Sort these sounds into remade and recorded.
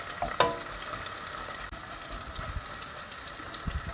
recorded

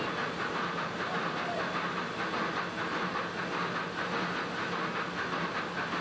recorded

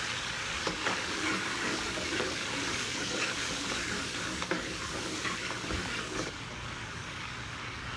remade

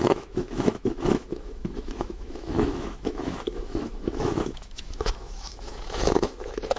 remade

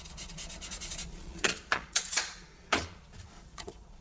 remade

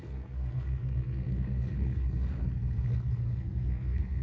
remade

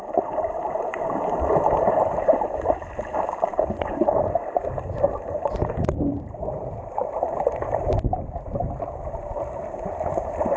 remade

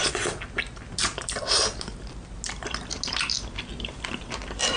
recorded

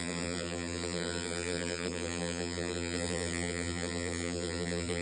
remade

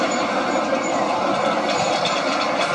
recorded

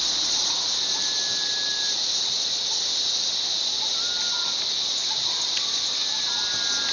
recorded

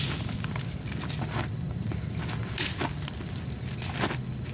recorded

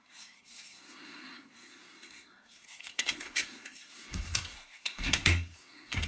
remade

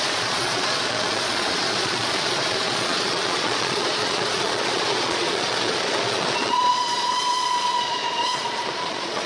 remade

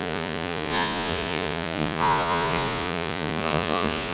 remade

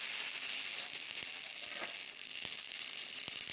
recorded